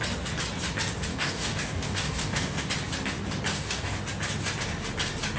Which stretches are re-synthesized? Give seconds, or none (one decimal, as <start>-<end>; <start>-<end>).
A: 1.1-2.7; 3.5-4.0